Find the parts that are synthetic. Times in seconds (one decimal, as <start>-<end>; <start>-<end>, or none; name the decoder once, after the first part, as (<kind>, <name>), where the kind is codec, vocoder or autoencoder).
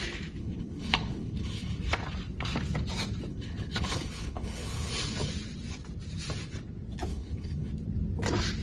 0.4-1.8 (codec, HILCodec); 3.3-5.3; 7.1-7.7